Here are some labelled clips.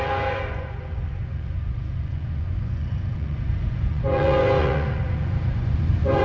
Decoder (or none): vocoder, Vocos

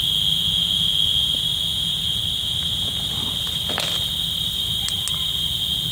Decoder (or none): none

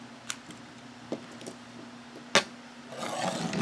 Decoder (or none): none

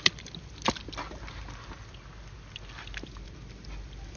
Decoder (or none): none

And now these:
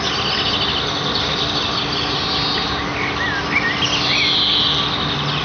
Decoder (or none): none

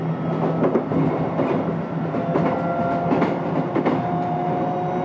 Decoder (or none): none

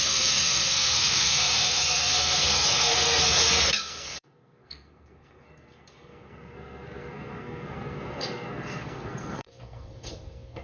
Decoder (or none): codec, SNAC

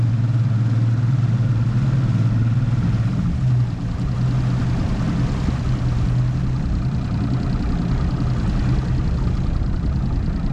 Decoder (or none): none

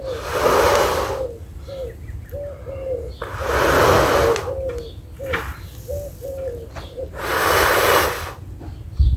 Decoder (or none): none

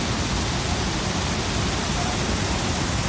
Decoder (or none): none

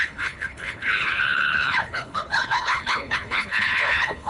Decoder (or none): codec, HILCodec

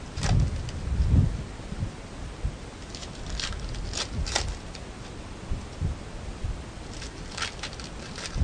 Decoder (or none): none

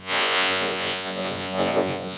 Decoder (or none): vocoder, Vocos